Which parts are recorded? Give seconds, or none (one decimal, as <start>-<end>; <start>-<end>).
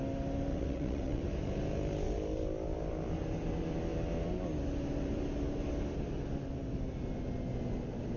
0.0-0.5; 1.2-8.2